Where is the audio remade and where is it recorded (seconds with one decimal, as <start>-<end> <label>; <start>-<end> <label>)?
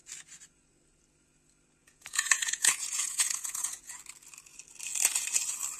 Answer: 0.0-1.8 recorded; 1.8-4.0 remade; 4.0-5.8 recorded